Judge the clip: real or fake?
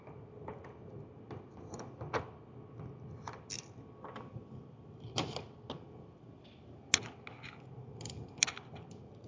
real